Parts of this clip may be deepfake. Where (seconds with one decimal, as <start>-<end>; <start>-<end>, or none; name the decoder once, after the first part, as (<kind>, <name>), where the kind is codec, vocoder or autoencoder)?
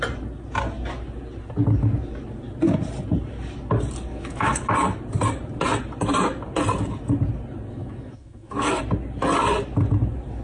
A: 4.1-4.7 (autoencoder, DAC-VAE); 7.8-8.8